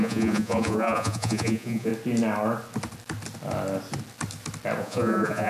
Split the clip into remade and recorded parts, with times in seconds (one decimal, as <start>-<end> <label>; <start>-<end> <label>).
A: 0.0-1.9 remade; 1.9-4.8 recorded; 4.8-5.5 remade